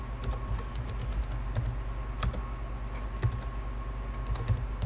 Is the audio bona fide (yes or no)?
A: yes